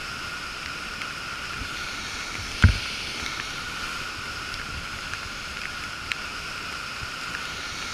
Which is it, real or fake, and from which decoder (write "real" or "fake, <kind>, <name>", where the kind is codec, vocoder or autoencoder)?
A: real